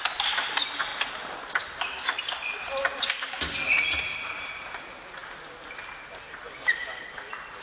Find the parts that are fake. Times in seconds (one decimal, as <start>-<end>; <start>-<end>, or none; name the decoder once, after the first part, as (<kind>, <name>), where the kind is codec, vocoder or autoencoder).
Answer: none